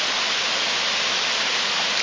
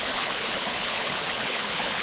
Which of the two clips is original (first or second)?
first